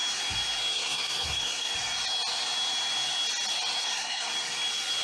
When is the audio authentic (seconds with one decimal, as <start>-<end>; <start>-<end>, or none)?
0.0-0.7; 1.7-3.8; 4.3-5.0